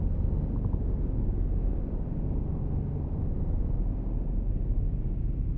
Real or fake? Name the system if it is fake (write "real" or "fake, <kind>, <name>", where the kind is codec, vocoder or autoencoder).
real